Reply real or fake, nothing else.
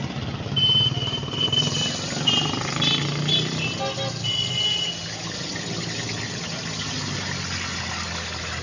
real